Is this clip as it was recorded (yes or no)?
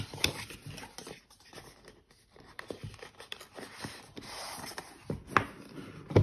yes